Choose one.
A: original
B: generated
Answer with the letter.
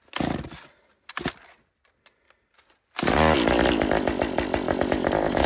A